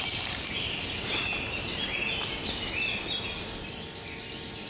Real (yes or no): yes